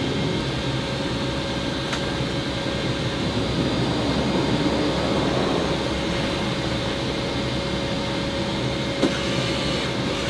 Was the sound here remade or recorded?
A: recorded